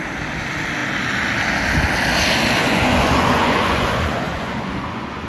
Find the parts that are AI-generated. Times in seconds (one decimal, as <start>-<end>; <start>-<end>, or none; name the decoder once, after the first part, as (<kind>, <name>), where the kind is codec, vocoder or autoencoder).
2.6-5.3 (vocoder, Vocos)